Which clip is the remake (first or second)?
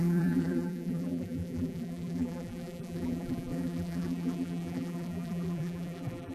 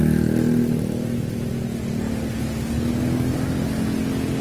first